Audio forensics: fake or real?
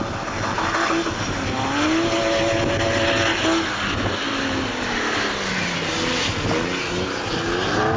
real